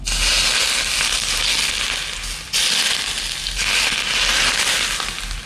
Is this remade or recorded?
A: recorded